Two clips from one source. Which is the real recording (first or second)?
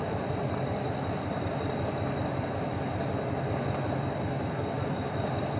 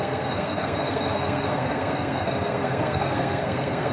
first